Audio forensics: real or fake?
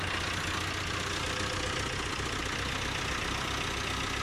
real